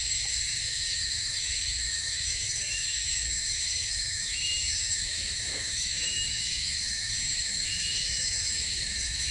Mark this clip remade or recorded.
remade